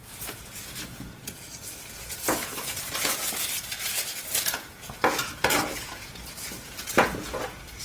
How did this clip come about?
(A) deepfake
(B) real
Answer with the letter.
A